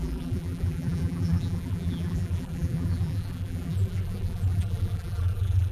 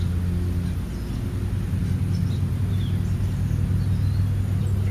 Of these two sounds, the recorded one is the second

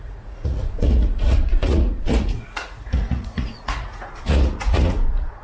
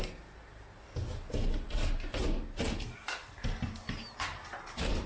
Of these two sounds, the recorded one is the second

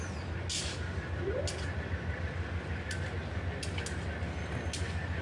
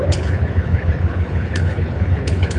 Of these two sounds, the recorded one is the first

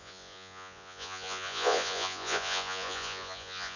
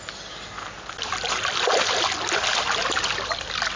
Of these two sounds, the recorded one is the second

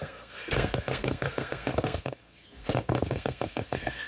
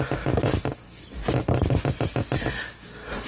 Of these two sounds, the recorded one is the second